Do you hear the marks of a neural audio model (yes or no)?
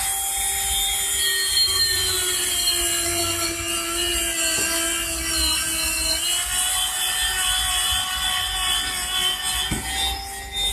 no